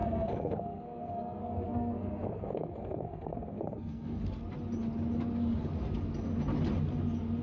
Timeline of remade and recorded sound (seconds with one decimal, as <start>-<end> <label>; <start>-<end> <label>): 0.0-4.2 remade; 4.2-7.4 recorded